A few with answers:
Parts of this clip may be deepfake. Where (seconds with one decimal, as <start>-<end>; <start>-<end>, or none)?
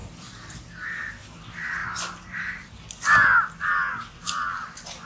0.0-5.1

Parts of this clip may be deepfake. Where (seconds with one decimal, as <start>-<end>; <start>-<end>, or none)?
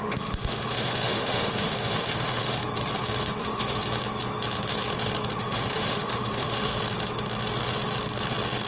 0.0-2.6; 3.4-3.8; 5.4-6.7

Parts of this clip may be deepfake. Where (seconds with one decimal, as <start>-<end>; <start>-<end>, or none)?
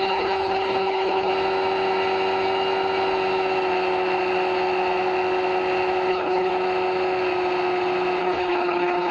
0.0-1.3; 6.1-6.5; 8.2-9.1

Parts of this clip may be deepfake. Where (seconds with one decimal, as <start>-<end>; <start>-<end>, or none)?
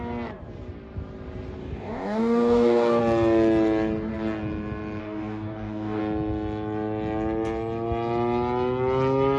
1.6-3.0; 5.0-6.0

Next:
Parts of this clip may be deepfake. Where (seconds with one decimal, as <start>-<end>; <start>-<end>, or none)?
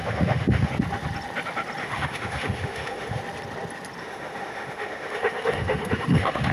0.0-0.7; 1.8-3.2; 4.0-6.5